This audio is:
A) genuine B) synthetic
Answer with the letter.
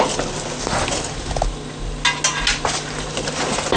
A